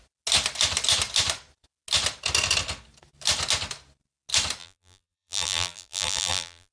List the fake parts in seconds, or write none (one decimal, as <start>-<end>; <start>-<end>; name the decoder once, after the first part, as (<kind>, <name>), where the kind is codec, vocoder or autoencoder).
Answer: 4.6-6.7 (vocoder, BigVGAN v2)